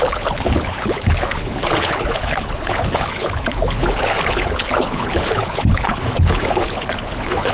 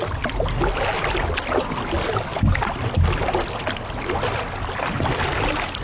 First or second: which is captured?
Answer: second